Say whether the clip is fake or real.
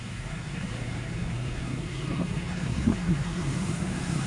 fake